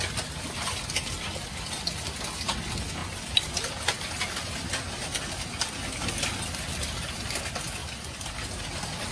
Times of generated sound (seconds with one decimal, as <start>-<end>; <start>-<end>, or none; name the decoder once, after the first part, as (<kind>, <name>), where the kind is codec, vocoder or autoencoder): 3.0-4.0 (vocoder, BigVGAN v2)